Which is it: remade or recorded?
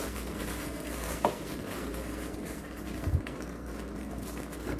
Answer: remade